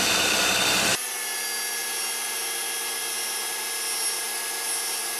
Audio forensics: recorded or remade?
recorded